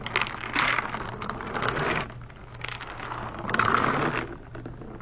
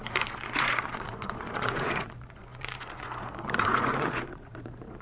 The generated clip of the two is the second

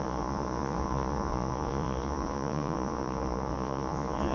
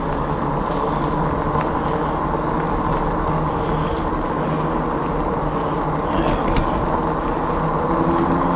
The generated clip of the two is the first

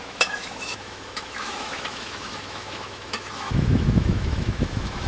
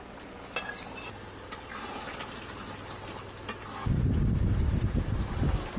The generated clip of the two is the first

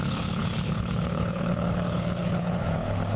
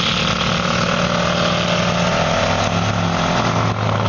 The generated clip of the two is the first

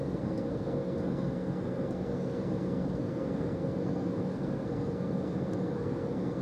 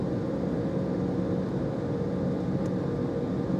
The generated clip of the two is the first